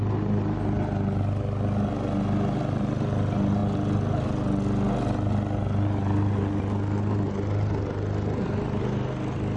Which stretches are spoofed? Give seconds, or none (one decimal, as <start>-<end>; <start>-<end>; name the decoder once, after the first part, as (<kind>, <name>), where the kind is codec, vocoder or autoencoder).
none